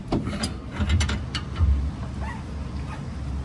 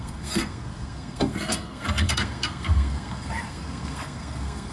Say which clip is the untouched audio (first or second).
first